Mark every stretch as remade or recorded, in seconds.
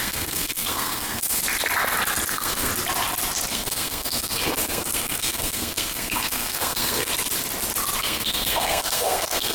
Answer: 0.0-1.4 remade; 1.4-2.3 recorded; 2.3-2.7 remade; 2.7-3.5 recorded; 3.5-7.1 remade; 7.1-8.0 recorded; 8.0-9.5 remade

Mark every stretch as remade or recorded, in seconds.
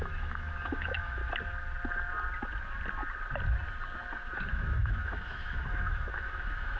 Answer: 0.0-1.2 remade; 1.2-4.5 recorded; 4.5-6.8 remade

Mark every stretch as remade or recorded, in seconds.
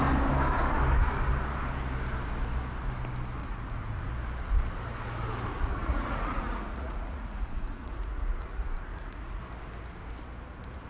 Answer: 0.0-3.4 recorded; 3.4-4.1 remade; 4.1-5.5 recorded; 5.5-9.4 remade; 9.4-10.9 recorded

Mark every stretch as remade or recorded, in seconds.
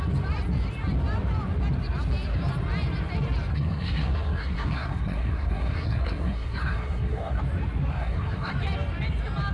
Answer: 0.0-3.5 recorded; 3.5-7.4 remade; 7.4-7.9 recorded; 7.9-8.5 remade; 8.5-9.5 recorded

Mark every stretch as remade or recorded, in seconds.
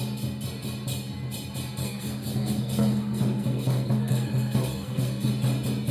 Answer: 0.0-1.8 recorded; 1.8-5.3 remade; 5.3-5.9 recorded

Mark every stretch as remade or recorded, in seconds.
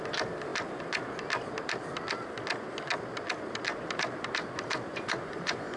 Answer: 0.0-4.9 recorded; 4.9-5.8 remade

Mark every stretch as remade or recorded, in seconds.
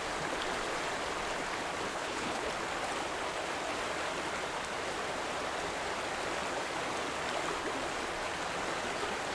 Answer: 0.0-1.9 recorded; 1.9-2.5 remade; 2.5-9.3 recorded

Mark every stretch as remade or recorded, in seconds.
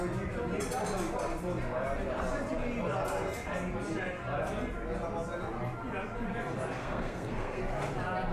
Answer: 0.0-6.8 recorded; 6.8-7.6 remade; 7.6-8.3 recorded